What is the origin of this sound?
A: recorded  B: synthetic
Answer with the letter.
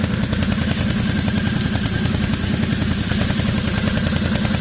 A